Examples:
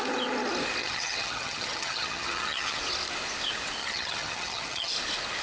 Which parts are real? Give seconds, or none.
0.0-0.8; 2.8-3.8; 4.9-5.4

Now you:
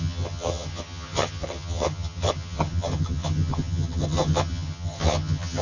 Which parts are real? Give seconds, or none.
none

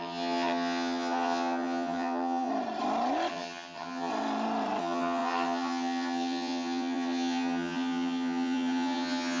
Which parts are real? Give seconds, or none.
2.5-3.3; 4.1-4.8

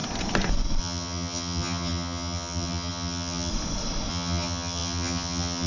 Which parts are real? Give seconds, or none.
0.0-0.8; 3.5-4.1

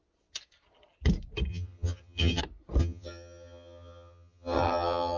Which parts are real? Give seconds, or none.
0.0-1.5; 2.4-2.8

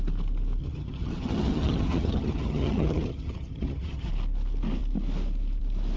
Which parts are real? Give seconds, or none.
0.0-0.6; 4.1-6.0

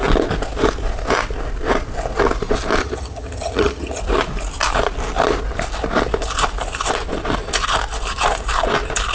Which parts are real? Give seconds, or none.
0.0-2.8; 4.0-9.1